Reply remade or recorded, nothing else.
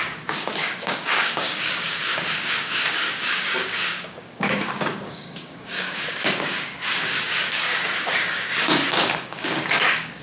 remade